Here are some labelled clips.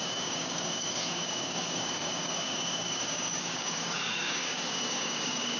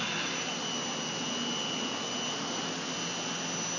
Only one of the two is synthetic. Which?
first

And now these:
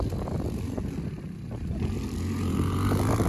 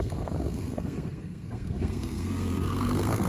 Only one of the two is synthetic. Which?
second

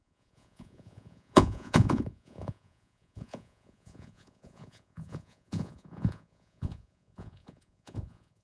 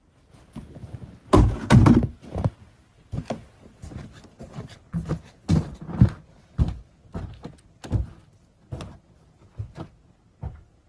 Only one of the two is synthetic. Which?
first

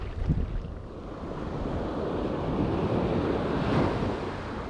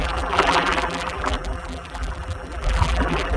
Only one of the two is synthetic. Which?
second